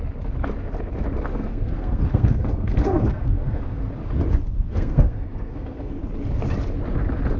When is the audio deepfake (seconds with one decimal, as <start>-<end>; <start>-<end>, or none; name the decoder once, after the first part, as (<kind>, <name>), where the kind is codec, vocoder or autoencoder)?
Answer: 1.3-3.9 (codec, SNAC); 4.5-6.0